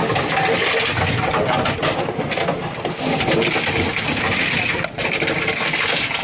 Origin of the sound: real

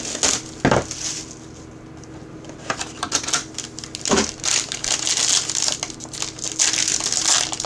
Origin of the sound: real